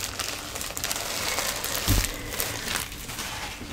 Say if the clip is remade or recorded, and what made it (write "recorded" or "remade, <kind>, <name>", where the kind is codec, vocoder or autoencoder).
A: recorded